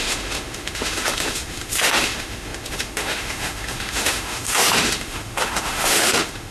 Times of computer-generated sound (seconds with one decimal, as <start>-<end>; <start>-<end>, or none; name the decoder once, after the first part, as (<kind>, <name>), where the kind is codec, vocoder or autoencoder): 0.0-6.5 (autoencoder, DAC-VAE)